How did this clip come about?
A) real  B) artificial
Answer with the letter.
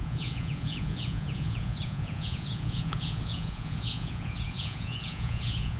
B